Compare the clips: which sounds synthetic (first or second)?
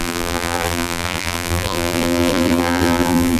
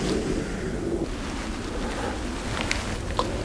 first